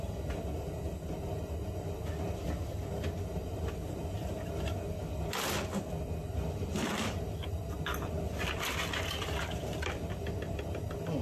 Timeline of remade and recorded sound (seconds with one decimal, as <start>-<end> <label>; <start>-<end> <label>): 0.0-11.2 recorded

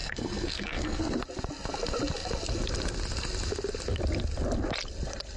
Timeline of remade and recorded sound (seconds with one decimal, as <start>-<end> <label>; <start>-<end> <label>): 0.0-1.2 remade; 1.2-5.4 recorded